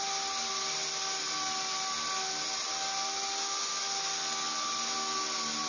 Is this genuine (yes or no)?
yes